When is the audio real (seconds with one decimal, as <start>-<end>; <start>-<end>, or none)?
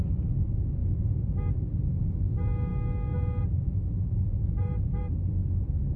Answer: 0.0-4.3; 5.0-6.0